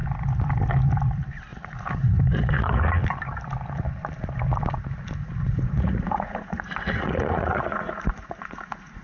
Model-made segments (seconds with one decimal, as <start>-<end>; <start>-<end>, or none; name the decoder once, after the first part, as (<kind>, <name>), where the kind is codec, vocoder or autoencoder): 1.5-2.8 (vocoder, Vocos); 5.2-9.0